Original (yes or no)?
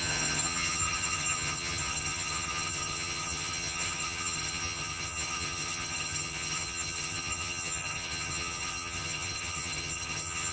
no